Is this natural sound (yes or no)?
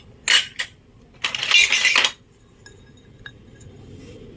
yes